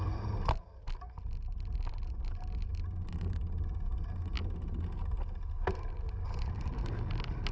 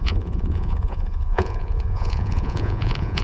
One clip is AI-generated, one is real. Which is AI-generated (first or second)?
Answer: second